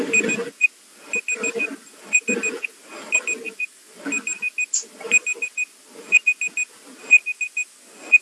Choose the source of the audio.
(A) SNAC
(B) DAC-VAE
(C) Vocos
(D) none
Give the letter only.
D